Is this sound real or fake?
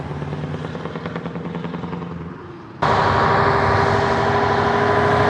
real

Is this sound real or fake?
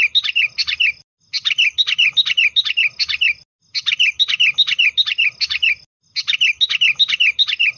real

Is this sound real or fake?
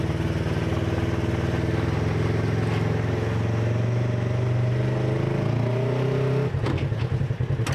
real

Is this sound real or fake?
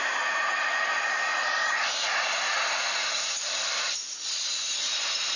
real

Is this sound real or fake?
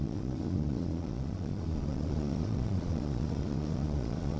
fake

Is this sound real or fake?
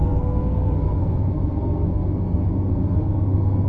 fake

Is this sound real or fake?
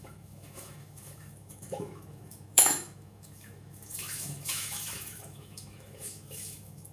fake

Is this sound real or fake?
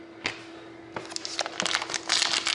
real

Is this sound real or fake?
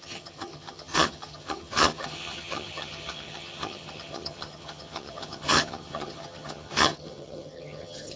fake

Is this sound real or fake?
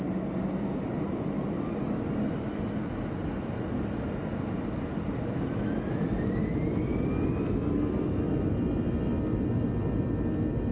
real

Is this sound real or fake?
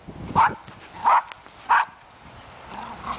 real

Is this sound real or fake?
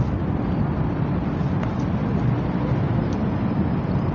real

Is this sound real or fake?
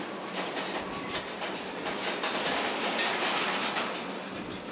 real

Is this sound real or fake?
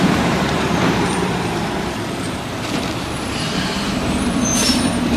fake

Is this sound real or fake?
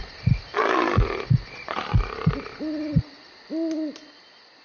real